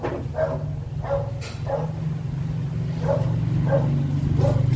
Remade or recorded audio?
recorded